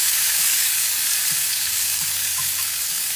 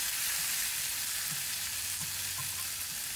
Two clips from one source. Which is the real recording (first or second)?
second